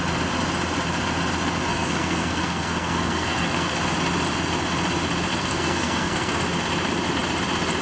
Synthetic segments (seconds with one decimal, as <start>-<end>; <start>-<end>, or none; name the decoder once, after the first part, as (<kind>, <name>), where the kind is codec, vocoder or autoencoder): 1.7-3.8 (codec, SNAC); 5.3-6.4

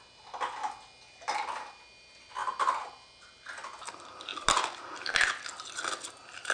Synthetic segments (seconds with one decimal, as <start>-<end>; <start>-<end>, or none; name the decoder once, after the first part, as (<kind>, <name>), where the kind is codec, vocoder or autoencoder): none

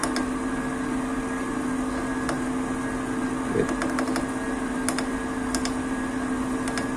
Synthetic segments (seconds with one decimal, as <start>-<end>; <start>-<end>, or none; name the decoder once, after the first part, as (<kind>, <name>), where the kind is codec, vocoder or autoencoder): none

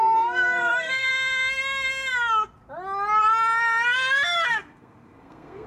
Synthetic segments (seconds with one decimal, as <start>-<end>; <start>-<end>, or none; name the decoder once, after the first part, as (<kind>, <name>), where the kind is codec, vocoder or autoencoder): 0.0-1.1 (codec, SNAC); 4.5-5.7

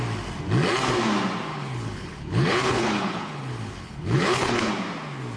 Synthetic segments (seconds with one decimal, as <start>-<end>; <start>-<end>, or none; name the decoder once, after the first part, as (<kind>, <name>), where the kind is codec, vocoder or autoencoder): 1.5-4.7 (codec, HILCodec)

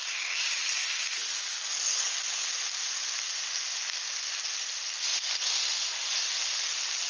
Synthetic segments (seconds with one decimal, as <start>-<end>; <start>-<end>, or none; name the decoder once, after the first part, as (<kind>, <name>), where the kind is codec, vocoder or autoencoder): none

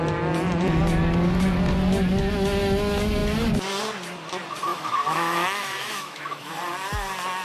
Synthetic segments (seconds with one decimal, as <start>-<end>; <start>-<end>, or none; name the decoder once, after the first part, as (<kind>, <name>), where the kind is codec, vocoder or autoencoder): 4.7-6.5 (autoencoder, DAC-VAE)

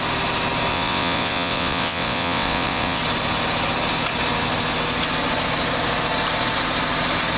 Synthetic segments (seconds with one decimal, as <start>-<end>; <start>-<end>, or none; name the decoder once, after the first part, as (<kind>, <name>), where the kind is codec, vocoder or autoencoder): 0.7-3.0 (vocoder, WaveNeXt)